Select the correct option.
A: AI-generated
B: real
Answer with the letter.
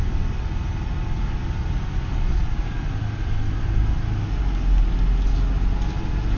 B